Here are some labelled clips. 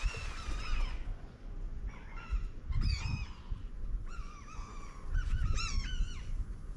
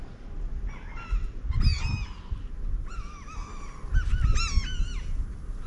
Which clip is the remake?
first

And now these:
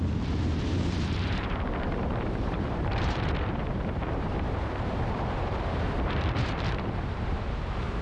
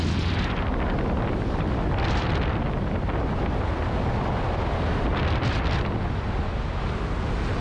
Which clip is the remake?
first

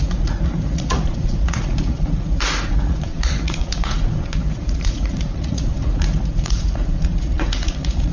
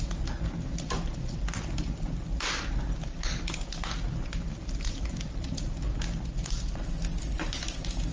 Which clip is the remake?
first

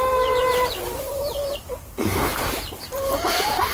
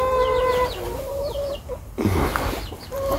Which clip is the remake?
first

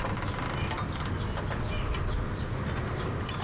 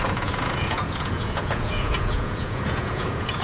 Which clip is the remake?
second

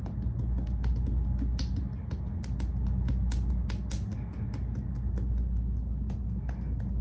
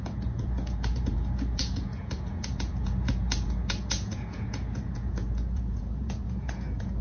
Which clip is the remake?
second